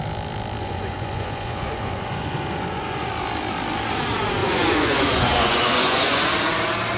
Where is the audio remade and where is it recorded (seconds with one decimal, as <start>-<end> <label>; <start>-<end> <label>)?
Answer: 0.0-0.6 recorded; 0.6-3.1 remade; 3.1-4.4 recorded; 4.4-6.2 remade; 6.2-7.0 recorded